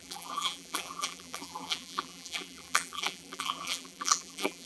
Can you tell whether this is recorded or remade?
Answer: remade